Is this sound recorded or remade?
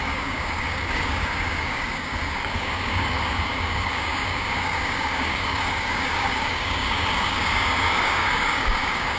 remade